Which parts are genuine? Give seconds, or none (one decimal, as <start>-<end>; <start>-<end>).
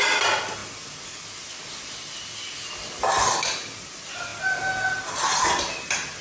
0.0-6.2